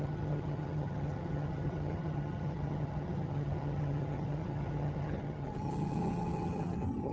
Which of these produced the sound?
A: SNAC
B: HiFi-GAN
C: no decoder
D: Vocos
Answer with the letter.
B